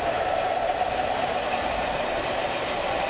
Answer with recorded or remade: recorded